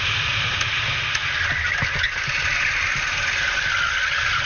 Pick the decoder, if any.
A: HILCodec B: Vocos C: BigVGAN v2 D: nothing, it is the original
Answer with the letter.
D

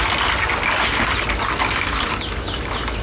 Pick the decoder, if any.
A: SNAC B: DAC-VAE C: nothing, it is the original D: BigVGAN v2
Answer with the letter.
C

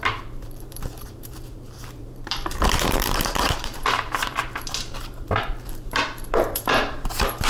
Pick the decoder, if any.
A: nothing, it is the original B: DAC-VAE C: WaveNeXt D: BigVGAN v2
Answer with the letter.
D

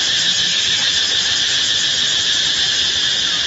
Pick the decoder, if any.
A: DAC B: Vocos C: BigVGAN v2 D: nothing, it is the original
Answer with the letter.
D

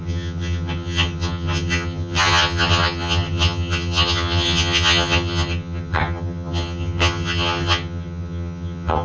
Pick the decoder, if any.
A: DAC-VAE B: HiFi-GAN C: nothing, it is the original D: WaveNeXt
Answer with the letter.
B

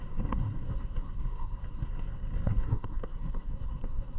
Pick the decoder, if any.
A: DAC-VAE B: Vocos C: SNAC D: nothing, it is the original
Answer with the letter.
C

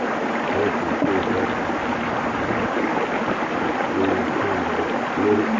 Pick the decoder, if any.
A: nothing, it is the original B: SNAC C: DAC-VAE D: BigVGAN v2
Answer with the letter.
A